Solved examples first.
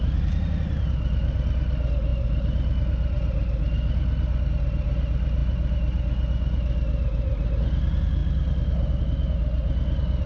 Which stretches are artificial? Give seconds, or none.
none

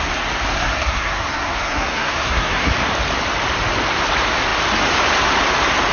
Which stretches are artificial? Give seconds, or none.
0.5-2.7 (codec, SNAC)

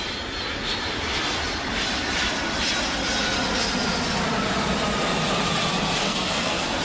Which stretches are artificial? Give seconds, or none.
6.0-6.8 (codec, SNAC)

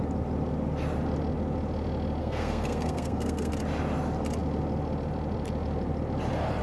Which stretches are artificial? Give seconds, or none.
2.2-3.5 (codec, SNAC)

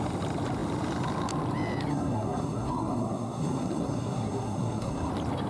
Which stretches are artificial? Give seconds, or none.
1.9-5.1 (codec, SNAC)